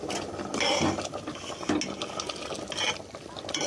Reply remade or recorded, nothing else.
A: recorded